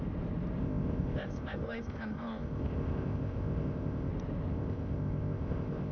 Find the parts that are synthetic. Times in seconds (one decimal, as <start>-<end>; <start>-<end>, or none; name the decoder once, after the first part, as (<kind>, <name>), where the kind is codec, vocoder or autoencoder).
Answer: 0.6-4.1 (codec, ZipCodec); 4.5-5.9